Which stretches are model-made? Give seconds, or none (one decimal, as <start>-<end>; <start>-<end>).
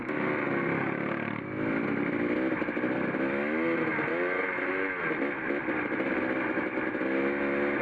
none